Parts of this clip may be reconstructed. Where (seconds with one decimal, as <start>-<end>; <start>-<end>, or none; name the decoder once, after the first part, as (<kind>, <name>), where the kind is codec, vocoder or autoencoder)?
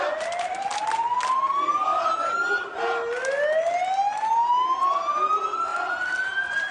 none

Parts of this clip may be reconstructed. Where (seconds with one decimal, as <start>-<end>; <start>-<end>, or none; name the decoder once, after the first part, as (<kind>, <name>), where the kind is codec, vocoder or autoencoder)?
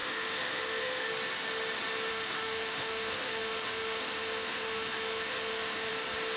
0.0-1.1 (autoencoder, DAC-VAE); 2.1-5.9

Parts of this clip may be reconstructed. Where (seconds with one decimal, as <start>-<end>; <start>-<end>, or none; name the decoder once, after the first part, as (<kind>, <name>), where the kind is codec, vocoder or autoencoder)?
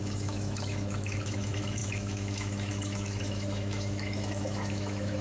0.0-5.2 (autoencoder, DAC-VAE)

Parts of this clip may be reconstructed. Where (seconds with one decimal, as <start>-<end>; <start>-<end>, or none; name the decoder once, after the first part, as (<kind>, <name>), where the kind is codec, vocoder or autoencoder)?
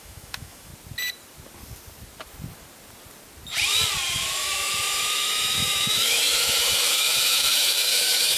0.0-0.7 (autoencoder, DAC-VAE); 4.1-8.4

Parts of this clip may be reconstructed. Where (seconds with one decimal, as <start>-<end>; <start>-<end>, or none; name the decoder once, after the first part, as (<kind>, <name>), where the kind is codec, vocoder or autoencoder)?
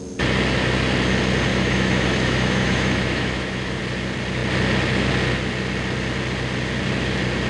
1.5-3.8 (autoencoder, DAC-VAE)